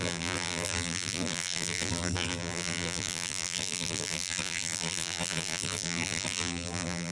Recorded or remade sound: remade